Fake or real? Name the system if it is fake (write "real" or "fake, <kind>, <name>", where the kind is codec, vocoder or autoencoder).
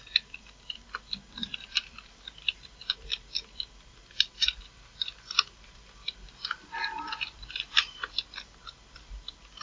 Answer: fake, vocoder, BigVGAN v2